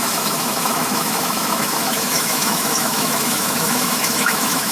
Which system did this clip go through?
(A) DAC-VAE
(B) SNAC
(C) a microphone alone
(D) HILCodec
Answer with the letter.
A